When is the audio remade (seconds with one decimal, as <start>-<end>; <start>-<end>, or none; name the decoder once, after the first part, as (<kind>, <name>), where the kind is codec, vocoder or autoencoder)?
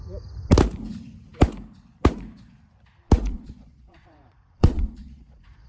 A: 3.3-5.7 (vocoder, Vocos)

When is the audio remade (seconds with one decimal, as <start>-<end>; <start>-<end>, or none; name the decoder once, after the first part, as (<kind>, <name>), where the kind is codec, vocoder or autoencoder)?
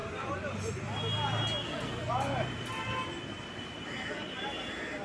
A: 1.6-2.1 (codec, SNAC)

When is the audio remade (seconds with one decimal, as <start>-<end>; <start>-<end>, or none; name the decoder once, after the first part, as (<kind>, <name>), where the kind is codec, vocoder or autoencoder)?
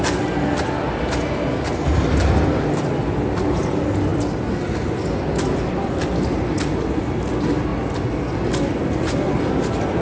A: none